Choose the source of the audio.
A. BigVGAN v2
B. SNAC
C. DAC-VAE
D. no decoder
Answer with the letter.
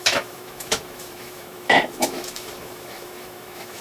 C